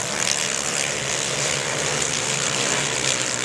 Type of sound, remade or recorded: recorded